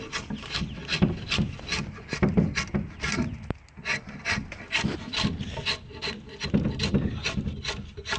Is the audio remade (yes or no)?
no